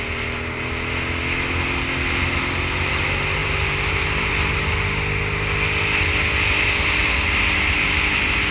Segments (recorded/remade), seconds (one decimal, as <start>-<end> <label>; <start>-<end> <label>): 0.0-8.5 recorded